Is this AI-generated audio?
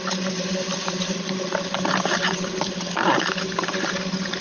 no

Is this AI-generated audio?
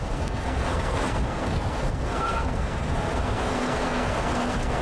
yes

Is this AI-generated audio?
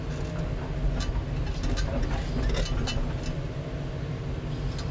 no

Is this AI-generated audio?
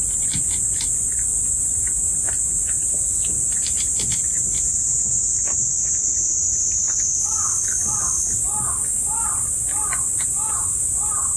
no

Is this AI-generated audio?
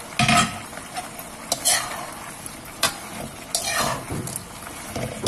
no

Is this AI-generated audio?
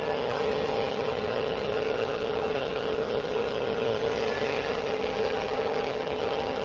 yes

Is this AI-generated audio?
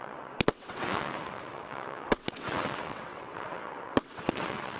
yes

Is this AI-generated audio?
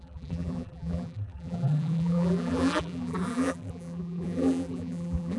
yes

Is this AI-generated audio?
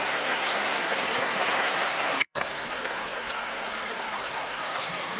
yes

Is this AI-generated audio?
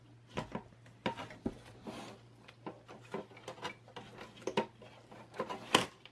no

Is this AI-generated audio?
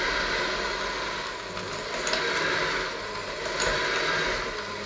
no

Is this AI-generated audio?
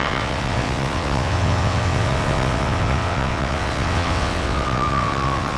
yes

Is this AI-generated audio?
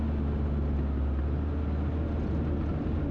no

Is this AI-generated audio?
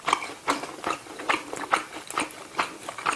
no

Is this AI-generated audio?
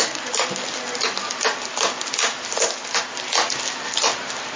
no